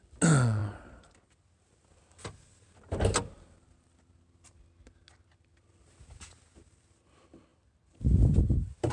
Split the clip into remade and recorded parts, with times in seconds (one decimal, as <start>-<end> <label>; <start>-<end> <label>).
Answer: 0.0-8.9 recorded